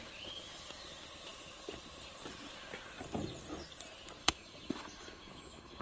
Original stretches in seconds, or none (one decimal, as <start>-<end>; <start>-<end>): 0.0-4.2